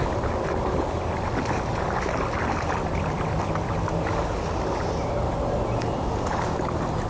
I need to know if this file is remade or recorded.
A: recorded